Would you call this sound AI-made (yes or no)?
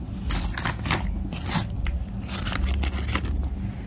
no